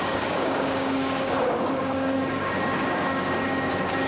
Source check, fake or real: fake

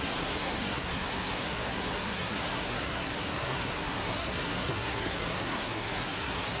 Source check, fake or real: fake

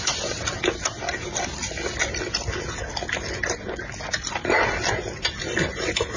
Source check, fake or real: real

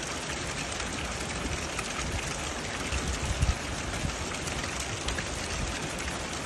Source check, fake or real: real